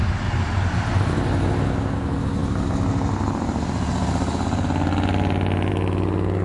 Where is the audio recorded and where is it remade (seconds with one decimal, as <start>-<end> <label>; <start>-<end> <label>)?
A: 0.0-6.4 recorded